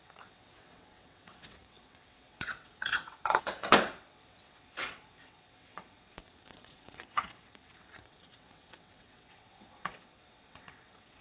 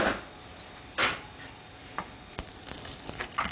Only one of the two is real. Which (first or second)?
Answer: second